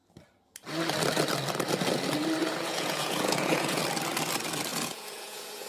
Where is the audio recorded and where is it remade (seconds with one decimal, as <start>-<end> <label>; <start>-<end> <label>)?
0.0-2.4 recorded; 2.4-3.8 remade; 3.8-4.7 recorded; 4.7-5.7 remade